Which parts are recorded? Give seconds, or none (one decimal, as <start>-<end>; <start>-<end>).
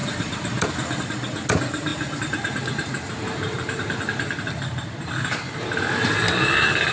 0.6-6.9